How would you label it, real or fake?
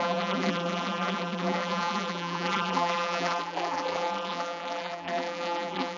fake